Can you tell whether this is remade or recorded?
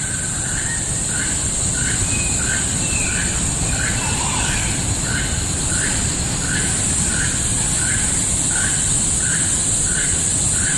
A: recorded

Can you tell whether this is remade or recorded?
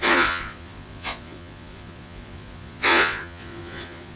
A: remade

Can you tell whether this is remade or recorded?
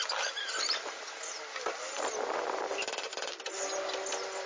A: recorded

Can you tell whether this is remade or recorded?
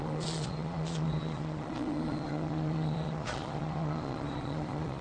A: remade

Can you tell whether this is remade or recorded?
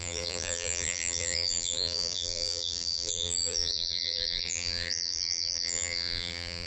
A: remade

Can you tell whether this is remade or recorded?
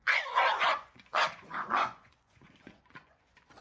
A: remade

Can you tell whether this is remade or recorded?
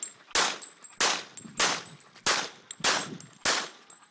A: recorded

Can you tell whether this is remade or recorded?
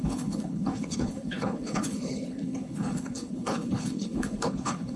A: remade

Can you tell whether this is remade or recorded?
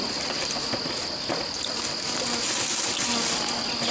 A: recorded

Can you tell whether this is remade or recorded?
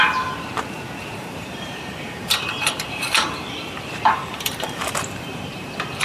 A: remade